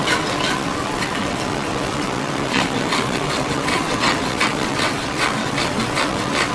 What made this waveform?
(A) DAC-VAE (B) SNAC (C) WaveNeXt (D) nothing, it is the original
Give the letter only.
C